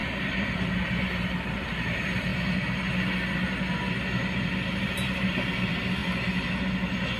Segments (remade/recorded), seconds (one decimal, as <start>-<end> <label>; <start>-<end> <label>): 0.0-2.3 remade; 2.3-4.8 recorded; 4.8-6.0 remade; 6.0-7.2 recorded